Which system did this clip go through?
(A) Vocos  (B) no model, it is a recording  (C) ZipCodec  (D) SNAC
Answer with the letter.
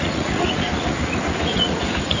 A